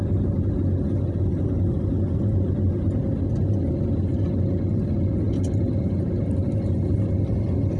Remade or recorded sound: recorded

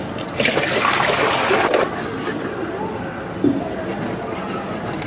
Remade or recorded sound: recorded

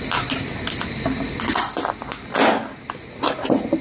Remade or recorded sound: recorded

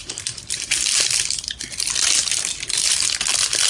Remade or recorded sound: recorded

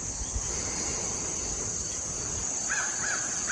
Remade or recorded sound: recorded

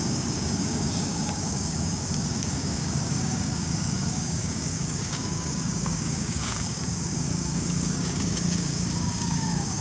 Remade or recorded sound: remade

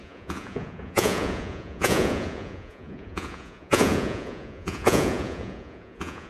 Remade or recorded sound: remade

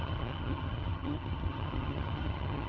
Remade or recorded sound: remade